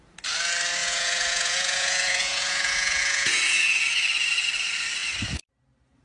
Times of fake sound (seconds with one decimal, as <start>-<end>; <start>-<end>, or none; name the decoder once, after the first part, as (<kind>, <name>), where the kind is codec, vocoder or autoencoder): 0.8-3.4 (vocoder, Vocos)